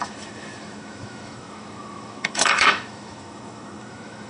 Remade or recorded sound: remade